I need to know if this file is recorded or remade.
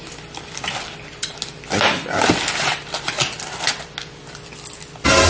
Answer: recorded